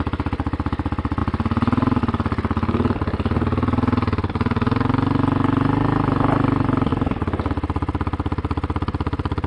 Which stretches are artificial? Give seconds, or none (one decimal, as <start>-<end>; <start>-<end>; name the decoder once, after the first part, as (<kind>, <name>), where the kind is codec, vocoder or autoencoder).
none